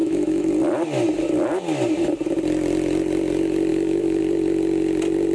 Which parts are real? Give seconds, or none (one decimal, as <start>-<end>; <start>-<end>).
0.5-3.7; 4.2-5.3